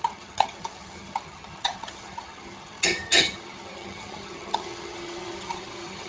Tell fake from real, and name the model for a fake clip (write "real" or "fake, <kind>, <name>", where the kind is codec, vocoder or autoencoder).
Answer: fake, vocoder, HiFi-GAN